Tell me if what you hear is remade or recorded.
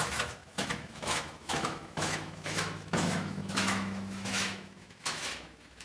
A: remade